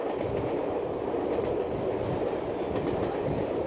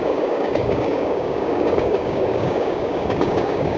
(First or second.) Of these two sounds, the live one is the first